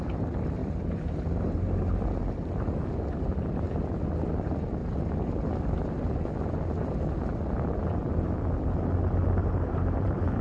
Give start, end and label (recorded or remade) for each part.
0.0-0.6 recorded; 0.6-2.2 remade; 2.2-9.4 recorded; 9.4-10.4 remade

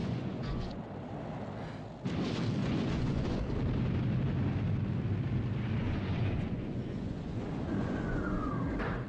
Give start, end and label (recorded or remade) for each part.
0.0-0.8 remade; 0.8-2.6 recorded; 2.6-3.4 remade; 3.4-5.8 recorded; 5.8-8.5 remade; 8.5-9.1 recorded

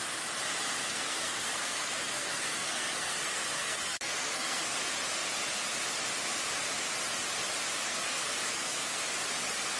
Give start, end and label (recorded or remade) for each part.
0.0-0.8 recorded; 0.8-4.8 remade; 4.8-7.9 recorded; 7.9-9.0 remade; 9.0-9.8 recorded

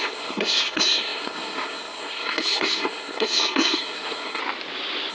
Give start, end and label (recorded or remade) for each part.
0.0-4.4 remade; 4.4-5.1 recorded

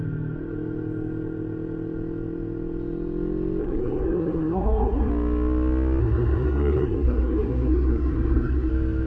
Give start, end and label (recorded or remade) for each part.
0.0-3.6 recorded; 3.6-5.1 remade; 5.1-6.0 recorded; 6.0-8.7 remade; 8.7-9.1 recorded

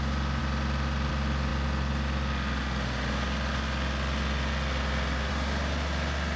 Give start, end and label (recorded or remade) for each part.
0.0-6.4 recorded